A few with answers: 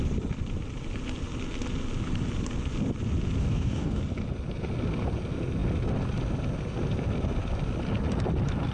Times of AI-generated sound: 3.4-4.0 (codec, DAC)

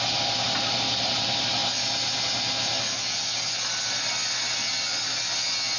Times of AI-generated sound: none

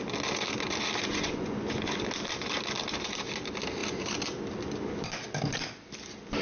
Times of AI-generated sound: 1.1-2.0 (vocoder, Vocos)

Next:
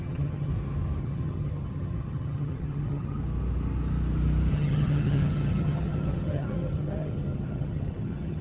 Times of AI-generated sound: 0.0-0.5 (vocoder, HiFi-GAN); 1.0-3.2; 4.5-8.4